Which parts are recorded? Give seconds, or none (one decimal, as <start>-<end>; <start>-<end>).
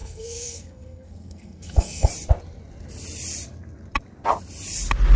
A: 2.1-5.2